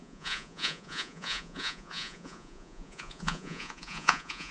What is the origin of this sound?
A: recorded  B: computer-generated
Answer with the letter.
B